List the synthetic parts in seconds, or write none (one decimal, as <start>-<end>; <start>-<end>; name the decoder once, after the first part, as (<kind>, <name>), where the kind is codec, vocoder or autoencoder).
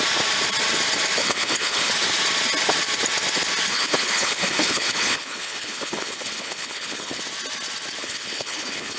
1.2-1.9 (codec, HILCodec); 3.7-7.2; 8.0-9.0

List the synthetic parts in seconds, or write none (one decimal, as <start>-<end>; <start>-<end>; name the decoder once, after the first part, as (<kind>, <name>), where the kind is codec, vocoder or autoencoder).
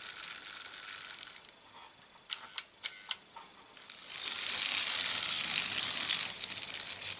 none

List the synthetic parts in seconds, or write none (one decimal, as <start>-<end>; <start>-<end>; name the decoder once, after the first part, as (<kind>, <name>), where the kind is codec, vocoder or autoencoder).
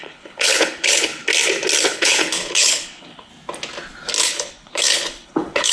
0.0-1.2 (codec, HILCodec); 1.8-3.3; 4.2-5.7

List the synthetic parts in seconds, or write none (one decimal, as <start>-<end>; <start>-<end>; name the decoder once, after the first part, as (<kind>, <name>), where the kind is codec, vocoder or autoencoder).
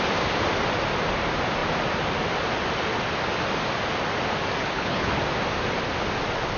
4.6-5.1 (codec, HILCodec)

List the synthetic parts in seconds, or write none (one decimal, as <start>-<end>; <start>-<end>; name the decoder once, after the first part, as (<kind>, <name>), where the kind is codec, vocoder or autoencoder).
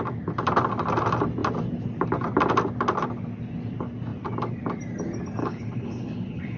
5.4-6.6 (codec, HILCodec)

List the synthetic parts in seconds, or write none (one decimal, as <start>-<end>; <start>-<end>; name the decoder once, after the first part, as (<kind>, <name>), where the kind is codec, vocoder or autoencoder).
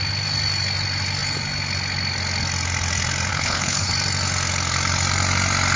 3.3-3.9 (codec, HILCodec)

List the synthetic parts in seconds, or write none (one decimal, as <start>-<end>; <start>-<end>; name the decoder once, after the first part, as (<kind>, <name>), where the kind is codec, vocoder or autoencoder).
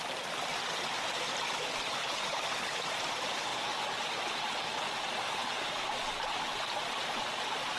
2.0-2.8 (codec, HILCodec)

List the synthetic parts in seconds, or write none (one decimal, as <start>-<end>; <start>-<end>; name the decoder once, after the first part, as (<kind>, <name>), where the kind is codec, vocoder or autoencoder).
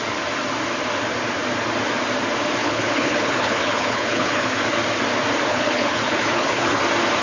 2.6-4.6 (codec, HILCodec); 5.5-6.8